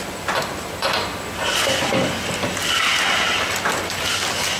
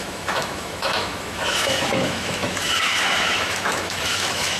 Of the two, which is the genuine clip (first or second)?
first